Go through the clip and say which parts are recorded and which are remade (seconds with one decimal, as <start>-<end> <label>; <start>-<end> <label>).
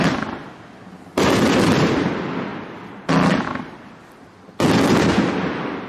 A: 0.0-5.9 recorded